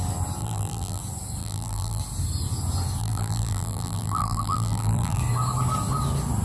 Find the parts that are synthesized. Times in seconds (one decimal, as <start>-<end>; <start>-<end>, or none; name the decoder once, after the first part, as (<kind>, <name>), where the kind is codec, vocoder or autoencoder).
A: 0.4-1.0 (vocoder, BigVGAN v2); 1.4-2.0; 3.0-5.2